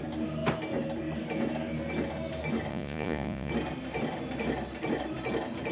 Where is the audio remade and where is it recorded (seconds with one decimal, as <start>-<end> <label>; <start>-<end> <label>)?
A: 0.0-2.7 recorded; 2.7-3.5 remade; 3.5-5.7 recorded